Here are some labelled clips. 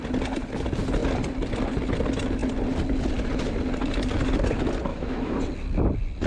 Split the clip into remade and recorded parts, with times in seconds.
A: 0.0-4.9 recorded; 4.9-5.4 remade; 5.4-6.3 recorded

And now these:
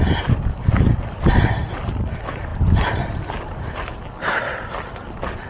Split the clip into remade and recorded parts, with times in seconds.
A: 0.0-5.5 recorded

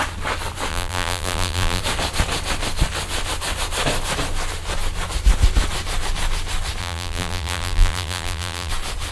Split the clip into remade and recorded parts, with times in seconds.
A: 0.0-0.7 recorded; 0.7-1.8 remade; 1.8-6.8 recorded; 6.8-8.7 remade; 8.7-9.1 recorded

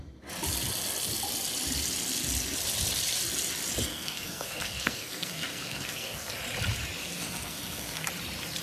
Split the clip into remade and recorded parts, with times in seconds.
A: 0.0-3.9 recorded; 3.9-6.3 remade; 6.3-7.0 recorded; 7.0-8.1 remade; 8.1-8.6 recorded

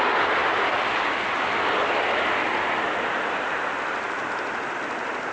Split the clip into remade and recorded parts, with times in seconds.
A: 0.0-5.3 recorded